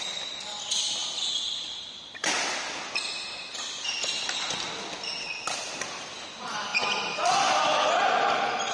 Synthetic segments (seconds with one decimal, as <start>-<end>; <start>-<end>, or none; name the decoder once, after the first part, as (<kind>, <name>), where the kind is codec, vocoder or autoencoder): none